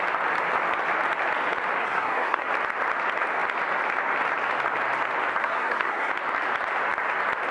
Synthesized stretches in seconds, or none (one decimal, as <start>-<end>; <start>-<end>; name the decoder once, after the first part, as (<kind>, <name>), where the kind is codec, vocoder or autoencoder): 1.8-2.5 (codec, SNAC); 5.4-6.1